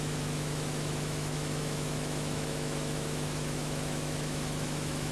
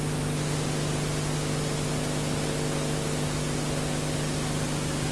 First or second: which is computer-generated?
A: first